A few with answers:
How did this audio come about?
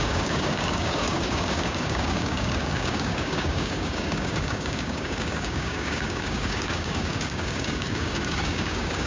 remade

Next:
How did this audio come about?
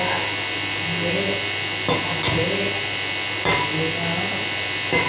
recorded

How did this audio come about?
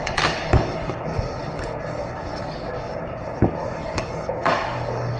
remade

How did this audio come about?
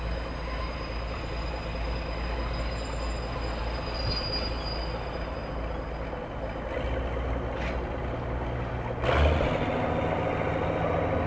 recorded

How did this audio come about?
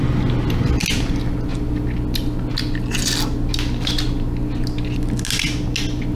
recorded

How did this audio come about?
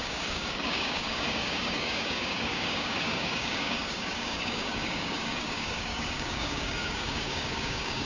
remade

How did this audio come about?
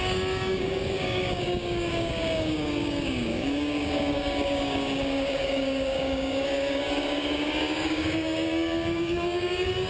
remade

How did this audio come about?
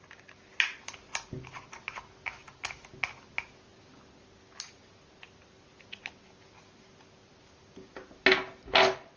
recorded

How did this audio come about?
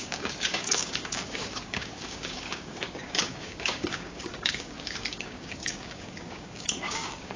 remade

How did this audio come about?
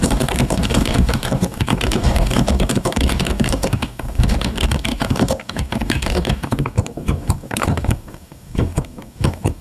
remade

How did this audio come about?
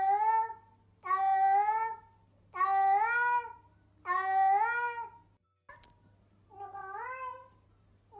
recorded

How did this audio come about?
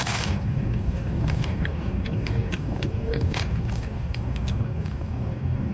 remade